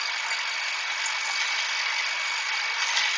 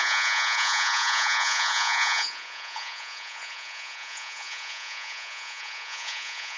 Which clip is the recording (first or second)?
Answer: first